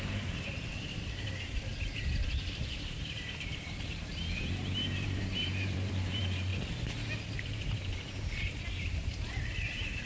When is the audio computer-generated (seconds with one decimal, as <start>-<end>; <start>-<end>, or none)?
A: 0.0-6.5; 7.4-10.1